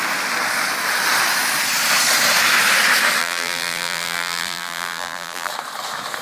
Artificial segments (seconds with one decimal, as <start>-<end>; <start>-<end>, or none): 3.2-5.5